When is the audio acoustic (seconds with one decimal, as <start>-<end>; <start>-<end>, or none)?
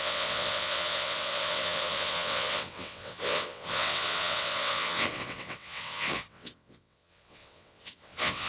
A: none